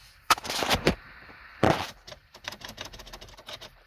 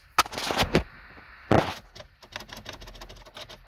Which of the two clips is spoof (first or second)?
first